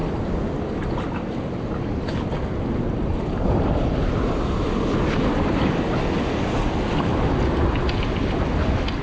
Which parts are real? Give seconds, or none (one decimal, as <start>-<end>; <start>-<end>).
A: 0.0-9.0